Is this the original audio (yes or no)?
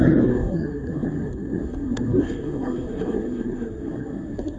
no